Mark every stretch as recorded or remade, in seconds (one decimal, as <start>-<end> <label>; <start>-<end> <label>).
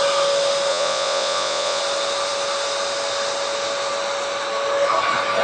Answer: 0.0-0.7 recorded; 0.7-1.8 remade; 1.8-5.4 recorded